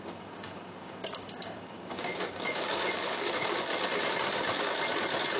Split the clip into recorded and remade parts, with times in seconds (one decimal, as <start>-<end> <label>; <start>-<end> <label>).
0.0-3.7 remade; 3.7-5.4 recorded

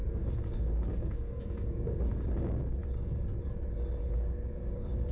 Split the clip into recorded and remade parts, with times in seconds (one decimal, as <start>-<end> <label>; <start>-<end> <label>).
0.0-2.8 remade; 2.8-4.1 recorded; 4.1-5.1 remade